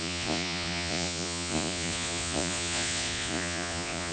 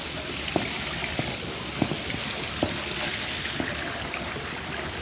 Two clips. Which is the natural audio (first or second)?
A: second